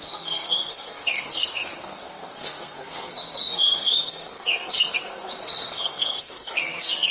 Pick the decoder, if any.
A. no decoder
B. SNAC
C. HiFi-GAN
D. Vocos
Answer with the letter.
B